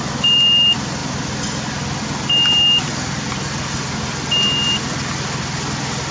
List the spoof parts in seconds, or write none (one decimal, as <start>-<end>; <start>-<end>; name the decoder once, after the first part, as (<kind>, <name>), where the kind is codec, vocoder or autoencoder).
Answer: none